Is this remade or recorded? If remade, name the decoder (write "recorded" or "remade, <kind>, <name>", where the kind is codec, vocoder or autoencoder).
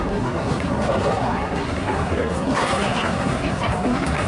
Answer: remade, codec, SNAC